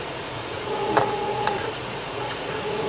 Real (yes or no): no